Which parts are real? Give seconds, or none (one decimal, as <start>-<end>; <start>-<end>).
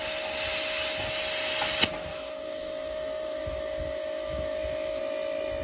0.0-2.1; 5.0-5.6